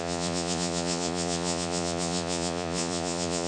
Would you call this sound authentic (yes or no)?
no